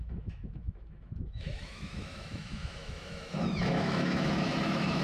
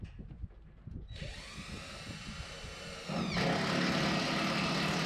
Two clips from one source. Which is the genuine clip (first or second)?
second